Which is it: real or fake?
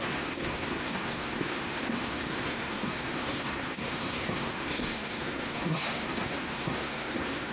fake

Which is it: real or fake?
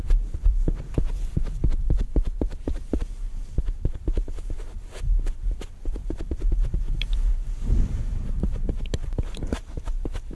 fake